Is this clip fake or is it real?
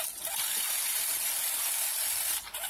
real